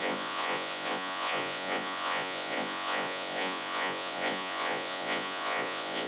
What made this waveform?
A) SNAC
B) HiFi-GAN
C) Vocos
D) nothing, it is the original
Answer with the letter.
C